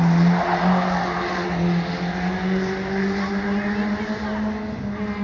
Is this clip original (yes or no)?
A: yes